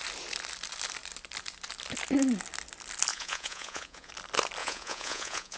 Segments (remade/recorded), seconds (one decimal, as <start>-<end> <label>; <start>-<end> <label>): 0.0-3.1 recorded; 3.1-4.1 remade; 4.1-4.6 recorded; 4.6-5.6 remade